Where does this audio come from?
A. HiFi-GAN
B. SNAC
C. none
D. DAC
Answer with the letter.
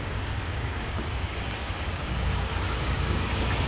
D